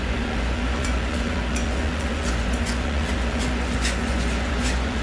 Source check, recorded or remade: remade